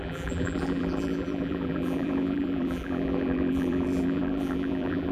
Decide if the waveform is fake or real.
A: fake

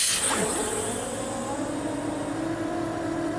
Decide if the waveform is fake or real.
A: real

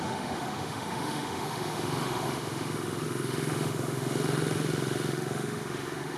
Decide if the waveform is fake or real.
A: fake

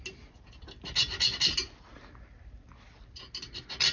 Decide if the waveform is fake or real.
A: real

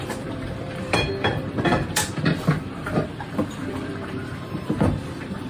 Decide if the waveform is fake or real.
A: fake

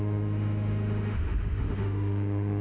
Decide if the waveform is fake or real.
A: fake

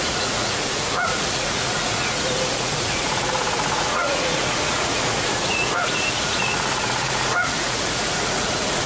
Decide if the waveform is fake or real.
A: fake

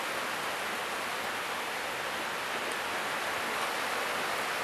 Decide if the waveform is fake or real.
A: real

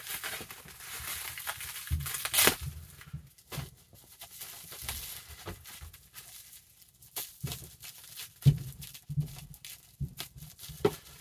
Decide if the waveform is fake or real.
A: real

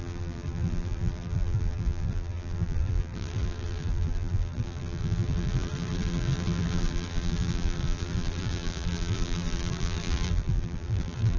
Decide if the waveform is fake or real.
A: fake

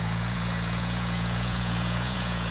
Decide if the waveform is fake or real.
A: fake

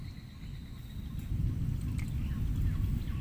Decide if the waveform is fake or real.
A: real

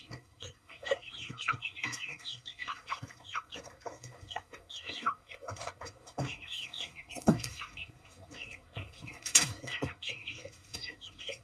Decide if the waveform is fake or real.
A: fake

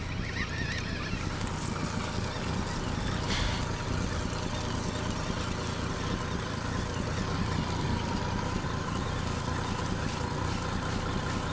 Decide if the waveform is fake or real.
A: real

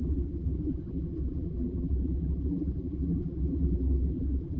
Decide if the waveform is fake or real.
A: fake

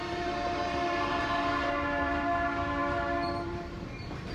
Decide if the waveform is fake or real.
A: fake